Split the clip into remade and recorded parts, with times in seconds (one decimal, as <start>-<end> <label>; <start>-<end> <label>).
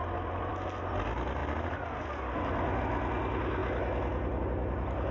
0.0-1.4 recorded; 1.4-2.8 remade; 2.8-5.1 recorded